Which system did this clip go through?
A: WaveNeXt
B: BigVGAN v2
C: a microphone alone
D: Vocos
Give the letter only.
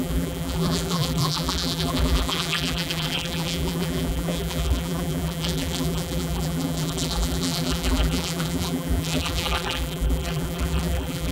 B